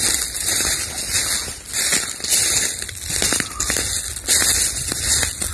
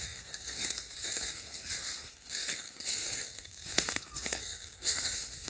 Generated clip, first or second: second